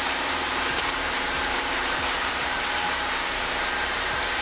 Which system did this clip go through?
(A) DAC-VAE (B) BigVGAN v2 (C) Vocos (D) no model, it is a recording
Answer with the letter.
B